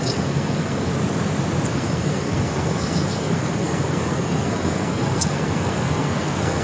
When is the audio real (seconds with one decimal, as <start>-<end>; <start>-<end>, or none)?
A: 0.9-1.7